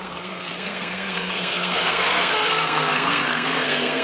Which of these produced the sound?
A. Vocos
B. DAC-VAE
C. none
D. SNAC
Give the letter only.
D